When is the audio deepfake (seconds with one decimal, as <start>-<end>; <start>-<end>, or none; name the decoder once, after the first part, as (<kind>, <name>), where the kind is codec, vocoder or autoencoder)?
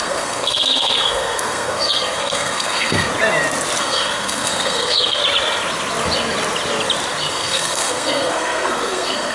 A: 0.0-3.1 (codec, SNAC); 3.8-5.2; 7.3-9.3